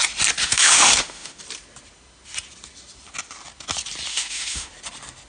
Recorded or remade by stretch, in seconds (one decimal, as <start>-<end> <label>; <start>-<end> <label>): 0.0-0.4 recorded; 0.4-1.4 remade; 1.4-4.1 recorded; 4.1-4.7 remade; 4.7-5.3 recorded